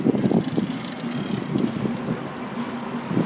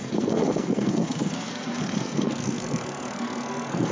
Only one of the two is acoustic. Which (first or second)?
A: first